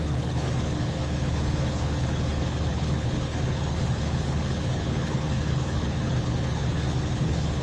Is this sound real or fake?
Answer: fake